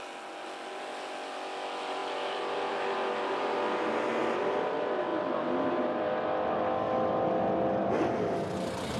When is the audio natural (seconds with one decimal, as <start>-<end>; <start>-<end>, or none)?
0.0-9.0